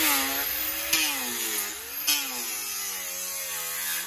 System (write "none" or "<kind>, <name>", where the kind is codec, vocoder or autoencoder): none